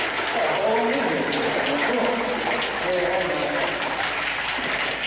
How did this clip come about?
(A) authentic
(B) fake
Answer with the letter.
A